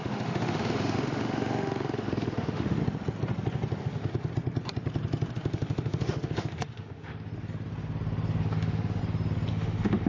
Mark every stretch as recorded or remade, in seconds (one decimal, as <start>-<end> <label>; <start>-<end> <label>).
0.0-2.8 remade; 2.8-3.8 recorded; 3.8-4.3 remade; 4.3-5.3 recorded; 5.3-7.3 remade; 7.3-8.4 recorded; 8.4-9.0 remade; 9.0-9.5 recorded; 9.5-10.1 remade